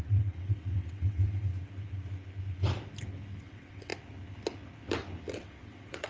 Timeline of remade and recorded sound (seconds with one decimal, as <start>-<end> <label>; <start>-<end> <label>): 0.0-1.5 remade; 1.5-3.4 recorded; 3.4-3.9 remade; 3.9-5.3 recorded; 5.3-6.1 remade